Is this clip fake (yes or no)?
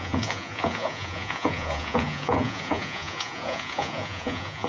yes